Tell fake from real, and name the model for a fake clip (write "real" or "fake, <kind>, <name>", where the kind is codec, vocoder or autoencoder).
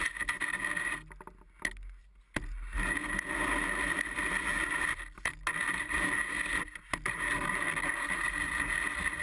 real